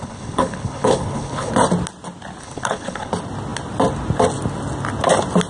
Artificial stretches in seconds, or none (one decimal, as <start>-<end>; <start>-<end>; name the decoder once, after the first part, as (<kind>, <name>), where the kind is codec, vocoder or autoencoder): 0.0-1.5 (codec, HILCodec); 2.4-3.1